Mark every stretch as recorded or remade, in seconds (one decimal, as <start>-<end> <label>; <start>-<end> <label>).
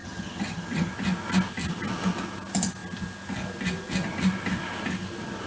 0.0-0.9 remade; 0.9-5.5 recorded